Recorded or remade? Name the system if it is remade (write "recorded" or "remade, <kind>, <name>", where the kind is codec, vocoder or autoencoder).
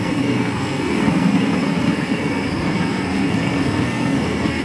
remade, codec, SNAC